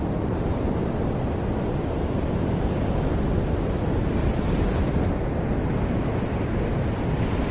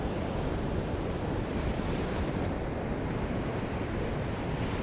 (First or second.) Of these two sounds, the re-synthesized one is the second